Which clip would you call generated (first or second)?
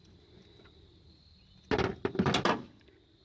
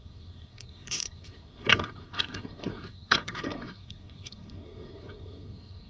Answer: second